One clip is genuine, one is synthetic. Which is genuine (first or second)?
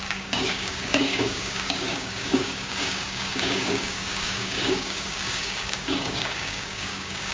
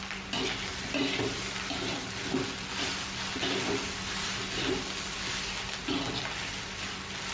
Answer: second